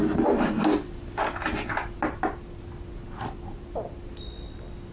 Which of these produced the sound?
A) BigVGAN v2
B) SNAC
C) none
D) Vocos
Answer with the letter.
C